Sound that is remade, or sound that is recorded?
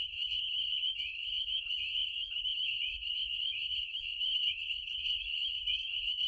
remade